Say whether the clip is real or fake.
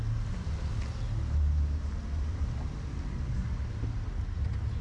real